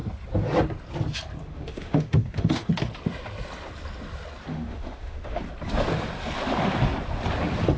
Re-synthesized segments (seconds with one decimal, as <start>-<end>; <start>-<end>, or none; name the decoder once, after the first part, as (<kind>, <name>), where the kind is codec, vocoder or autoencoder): 1.4-2.7 (autoencoder, DAC-VAE); 4.5-5.4